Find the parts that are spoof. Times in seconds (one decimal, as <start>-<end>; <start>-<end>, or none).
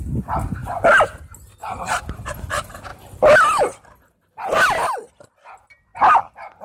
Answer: 1.6-2.5; 2.9-5.3